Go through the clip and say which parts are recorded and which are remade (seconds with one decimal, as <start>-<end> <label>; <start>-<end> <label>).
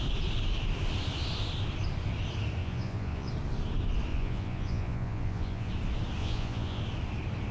0.0-2.6 recorded; 2.6-3.3 remade; 3.3-4.1 recorded; 4.1-5.7 remade; 5.7-6.2 recorded; 6.2-6.8 remade; 6.8-7.5 recorded